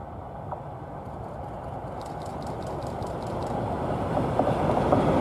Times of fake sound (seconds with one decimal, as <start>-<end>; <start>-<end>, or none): 2.3-4.1